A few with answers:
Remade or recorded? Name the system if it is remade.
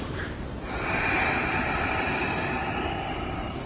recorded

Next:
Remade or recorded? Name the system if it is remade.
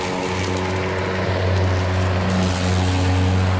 recorded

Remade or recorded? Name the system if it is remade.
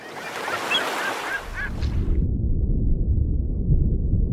recorded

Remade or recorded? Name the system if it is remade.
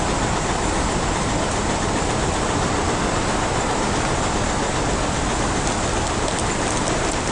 recorded